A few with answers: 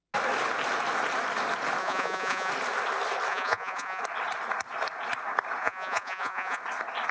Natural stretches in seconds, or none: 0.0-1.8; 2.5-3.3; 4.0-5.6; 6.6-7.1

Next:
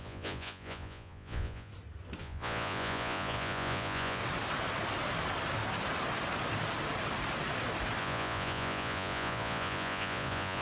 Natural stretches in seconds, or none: 1.7-2.2; 4.2-8.0

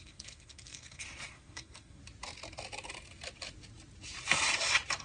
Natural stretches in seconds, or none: 2.0-5.0